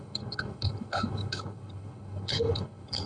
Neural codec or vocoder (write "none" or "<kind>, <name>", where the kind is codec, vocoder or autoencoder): codec, HILCodec